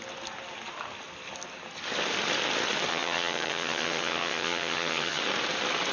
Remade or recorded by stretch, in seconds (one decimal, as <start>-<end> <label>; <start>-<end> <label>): 0.0-2.9 recorded; 2.9-5.2 remade; 5.2-5.9 recorded